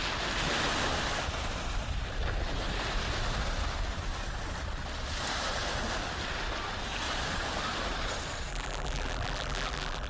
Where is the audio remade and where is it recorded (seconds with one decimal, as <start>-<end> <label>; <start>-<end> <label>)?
0.0-8.5 recorded; 8.5-10.1 remade

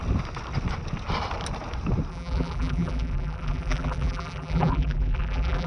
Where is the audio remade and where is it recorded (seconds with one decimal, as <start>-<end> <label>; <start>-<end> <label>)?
0.0-2.1 recorded; 2.1-5.7 remade

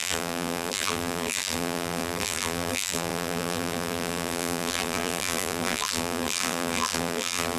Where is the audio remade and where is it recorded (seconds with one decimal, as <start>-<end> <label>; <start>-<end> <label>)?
0.0-7.6 remade

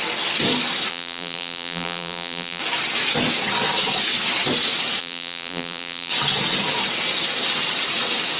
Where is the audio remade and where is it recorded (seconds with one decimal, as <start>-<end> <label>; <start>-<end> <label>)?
0.0-0.9 recorded; 0.9-2.6 remade; 2.6-5.0 recorded; 5.0-6.1 remade; 6.1-8.4 recorded

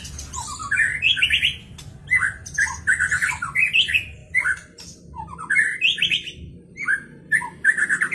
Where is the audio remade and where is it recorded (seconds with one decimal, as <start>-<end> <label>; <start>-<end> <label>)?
0.0-0.6 remade; 0.6-3.3 recorded; 3.3-8.1 remade